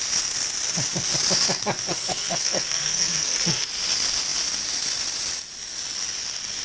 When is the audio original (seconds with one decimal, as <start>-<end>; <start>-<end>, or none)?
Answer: 0.0-1.9; 3.7-6.6